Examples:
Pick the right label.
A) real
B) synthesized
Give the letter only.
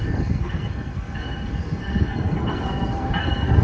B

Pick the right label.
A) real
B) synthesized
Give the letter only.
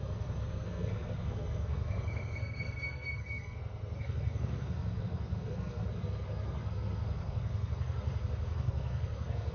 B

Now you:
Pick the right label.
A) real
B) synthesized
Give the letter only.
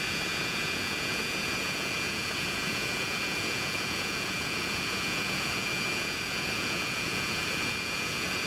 B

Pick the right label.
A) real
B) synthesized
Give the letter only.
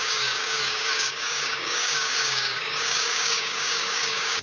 B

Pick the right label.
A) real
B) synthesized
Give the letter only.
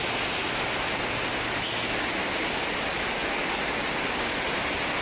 A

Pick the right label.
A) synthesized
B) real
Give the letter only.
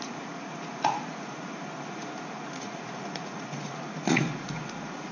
A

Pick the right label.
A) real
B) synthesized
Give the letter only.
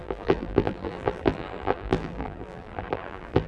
B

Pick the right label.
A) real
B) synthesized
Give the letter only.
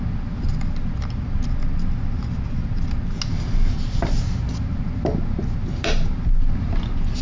A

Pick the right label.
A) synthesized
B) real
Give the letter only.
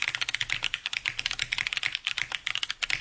B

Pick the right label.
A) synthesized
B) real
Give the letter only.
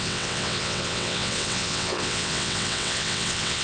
A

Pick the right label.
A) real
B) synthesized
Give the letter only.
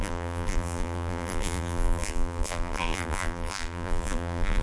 B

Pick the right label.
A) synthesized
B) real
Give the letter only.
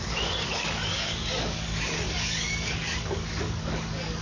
A